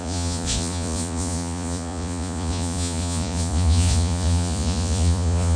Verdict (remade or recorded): remade